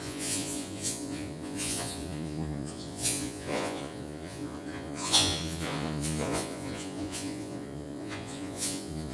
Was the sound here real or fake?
fake